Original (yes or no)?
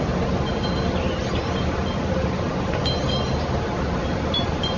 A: yes